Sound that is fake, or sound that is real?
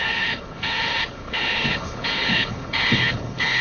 fake